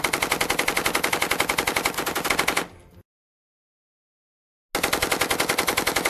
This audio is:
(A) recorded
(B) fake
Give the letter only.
A